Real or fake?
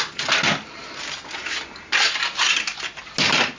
real